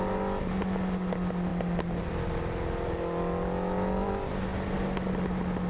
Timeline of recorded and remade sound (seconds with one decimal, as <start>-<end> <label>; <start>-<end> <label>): 0.0-5.7 recorded